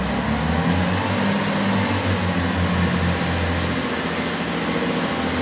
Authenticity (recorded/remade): recorded